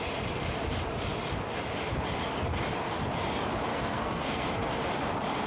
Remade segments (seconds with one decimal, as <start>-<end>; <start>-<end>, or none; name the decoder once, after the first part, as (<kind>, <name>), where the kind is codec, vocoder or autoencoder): 3.7-4.7 (codec, SNAC)